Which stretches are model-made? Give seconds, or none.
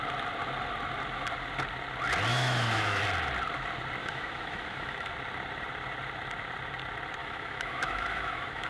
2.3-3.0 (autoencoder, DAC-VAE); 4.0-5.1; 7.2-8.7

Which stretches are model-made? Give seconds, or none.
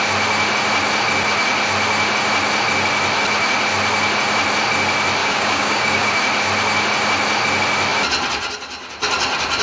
5.2-6.1 (codec, DAC)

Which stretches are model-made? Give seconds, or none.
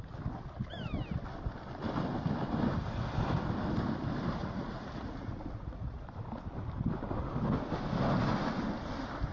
4.4-6.0 (vocoder, Vocos)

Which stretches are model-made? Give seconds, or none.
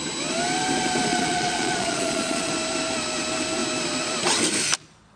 1.1-2.5 (vocoder, Vocos)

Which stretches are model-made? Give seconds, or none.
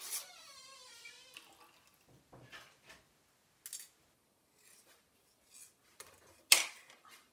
none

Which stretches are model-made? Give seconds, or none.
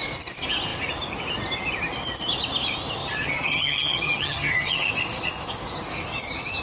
3.0-4.9 (vocoder, HiFi-GAN)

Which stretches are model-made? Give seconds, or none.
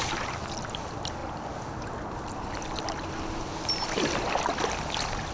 none